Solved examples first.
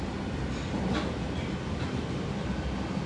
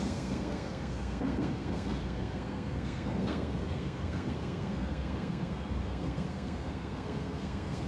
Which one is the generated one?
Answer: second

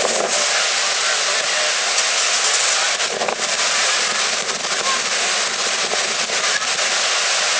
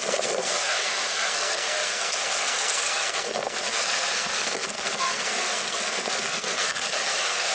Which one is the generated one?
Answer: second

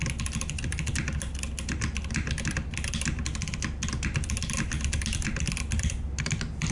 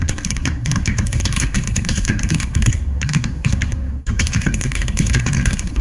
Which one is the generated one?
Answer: second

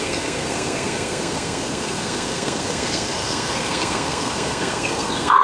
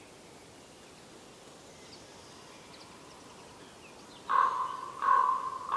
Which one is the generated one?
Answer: first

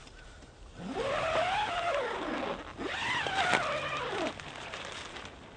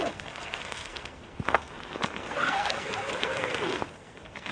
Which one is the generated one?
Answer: second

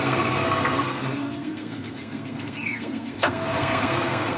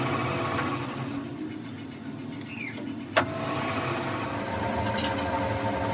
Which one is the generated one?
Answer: first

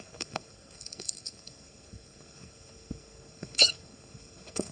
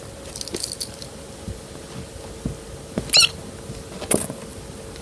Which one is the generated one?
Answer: first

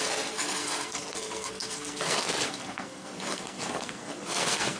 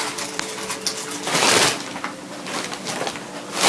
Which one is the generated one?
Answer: first